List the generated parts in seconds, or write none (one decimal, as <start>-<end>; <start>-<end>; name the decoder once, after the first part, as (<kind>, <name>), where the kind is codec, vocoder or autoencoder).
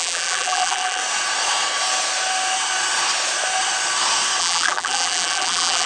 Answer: 0.0-1.0 (vocoder, BigVGAN v2); 4.4-5.9